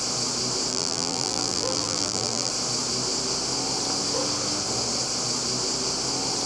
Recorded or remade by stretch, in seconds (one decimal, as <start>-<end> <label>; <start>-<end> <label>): 0.0-0.7 recorded; 0.7-2.5 remade; 2.5-6.5 recorded